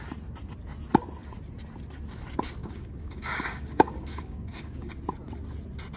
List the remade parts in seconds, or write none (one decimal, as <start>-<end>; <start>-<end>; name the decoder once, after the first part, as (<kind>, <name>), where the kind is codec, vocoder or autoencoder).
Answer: 2.6-4.9 (codec, DAC)